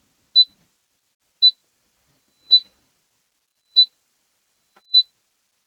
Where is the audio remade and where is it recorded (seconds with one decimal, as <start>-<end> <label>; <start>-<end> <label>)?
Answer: 0.0-1.6 recorded; 1.6-3.0 remade; 3.0-3.5 recorded; 3.5-5.1 remade; 5.1-5.7 recorded